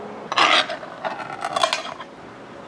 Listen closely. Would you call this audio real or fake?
real